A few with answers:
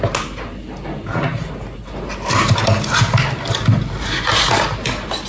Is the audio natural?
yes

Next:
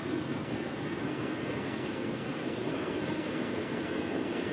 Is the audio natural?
no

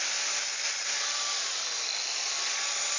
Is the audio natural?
yes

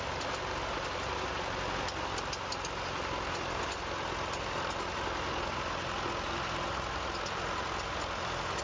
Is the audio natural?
yes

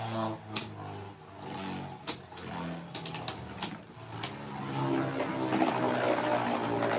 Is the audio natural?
yes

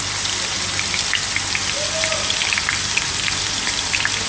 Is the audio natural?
yes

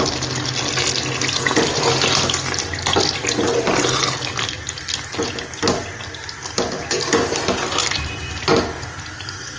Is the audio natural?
yes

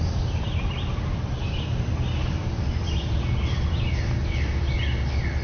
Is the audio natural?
yes